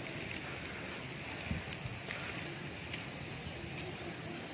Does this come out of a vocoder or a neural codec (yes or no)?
no